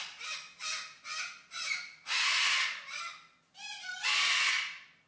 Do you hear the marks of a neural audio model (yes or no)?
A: no